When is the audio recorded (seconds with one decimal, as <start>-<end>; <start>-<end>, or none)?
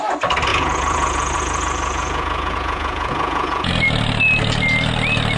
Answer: 0.0-0.5; 3.7-5.4